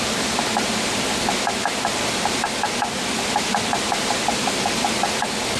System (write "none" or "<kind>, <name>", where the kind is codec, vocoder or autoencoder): none